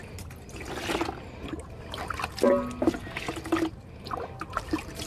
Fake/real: real